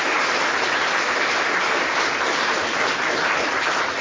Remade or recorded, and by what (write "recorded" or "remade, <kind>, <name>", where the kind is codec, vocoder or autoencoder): remade, vocoder, BigVGAN v2